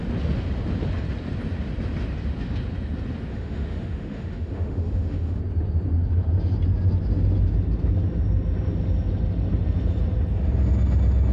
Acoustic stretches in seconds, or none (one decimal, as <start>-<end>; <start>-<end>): 0.0-3.3; 5.4-11.3